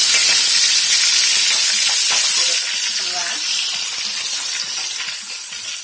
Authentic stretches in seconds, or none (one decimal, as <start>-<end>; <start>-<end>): 0.0-5.8

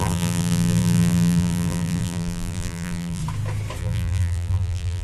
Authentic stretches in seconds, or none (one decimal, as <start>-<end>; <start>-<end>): 3.2-3.8

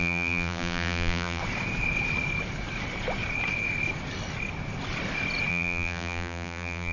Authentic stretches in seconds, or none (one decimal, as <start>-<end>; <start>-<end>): 1.4-5.5

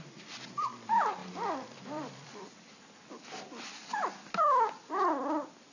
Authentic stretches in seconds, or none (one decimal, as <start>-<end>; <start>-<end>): 0.0-1.2; 2.8-5.7

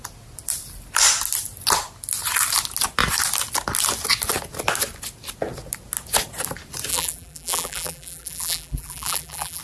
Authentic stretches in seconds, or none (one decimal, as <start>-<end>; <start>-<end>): 0.0-6.9

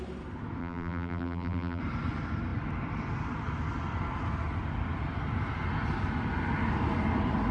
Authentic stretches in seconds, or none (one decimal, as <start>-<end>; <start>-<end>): 0.0-0.6; 1.8-7.5

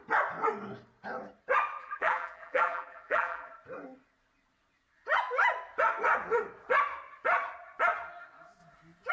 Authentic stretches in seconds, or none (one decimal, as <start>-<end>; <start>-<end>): 0.0-1.8; 3.5-9.1

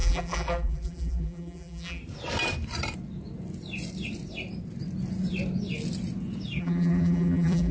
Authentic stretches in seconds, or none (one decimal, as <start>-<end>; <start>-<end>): 2.0-6.6